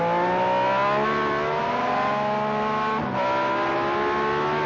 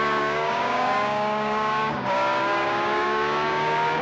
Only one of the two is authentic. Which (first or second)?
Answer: first